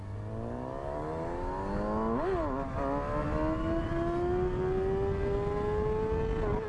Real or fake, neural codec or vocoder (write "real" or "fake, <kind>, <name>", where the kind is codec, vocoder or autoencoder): real